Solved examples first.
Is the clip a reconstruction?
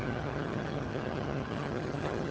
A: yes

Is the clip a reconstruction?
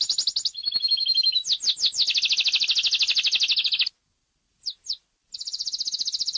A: no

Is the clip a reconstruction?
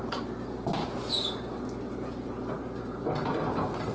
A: no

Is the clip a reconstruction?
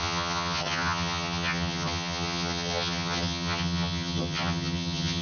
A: yes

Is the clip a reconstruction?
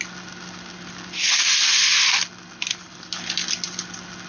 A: no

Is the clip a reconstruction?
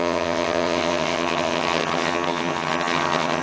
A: yes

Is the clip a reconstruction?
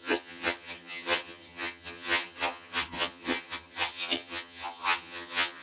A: yes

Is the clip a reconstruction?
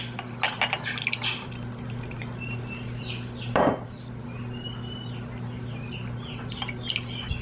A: no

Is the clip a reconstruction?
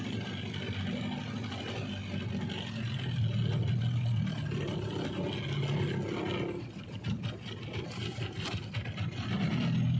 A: no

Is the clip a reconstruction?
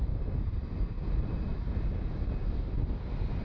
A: no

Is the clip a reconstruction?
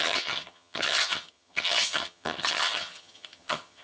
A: yes